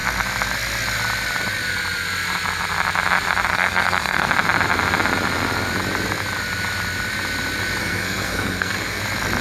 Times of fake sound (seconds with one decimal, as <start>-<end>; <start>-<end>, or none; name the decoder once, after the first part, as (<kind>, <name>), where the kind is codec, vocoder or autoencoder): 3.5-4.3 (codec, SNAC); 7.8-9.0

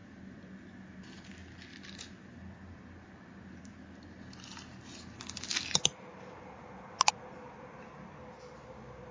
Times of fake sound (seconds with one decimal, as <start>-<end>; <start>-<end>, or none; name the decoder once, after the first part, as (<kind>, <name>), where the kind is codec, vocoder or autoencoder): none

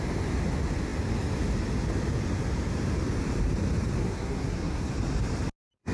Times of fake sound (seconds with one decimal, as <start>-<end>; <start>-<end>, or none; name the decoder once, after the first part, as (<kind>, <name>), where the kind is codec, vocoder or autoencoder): 4.0-4.9 (codec, SNAC)

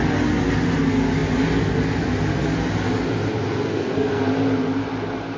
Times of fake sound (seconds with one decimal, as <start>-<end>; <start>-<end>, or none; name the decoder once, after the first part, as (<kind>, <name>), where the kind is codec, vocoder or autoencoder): 3.7-4.2 (codec, SNAC)

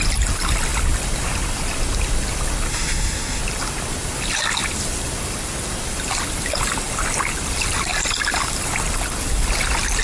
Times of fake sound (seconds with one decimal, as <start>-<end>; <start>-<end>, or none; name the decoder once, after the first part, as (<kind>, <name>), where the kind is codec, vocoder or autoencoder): 2.7-3.4 (codec, SNAC)

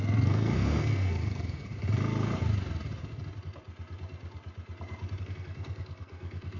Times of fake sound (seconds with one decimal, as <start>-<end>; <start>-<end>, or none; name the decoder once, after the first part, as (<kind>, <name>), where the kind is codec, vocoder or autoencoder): 0.0-1.7 (codec, SNAC); 5.2-6.6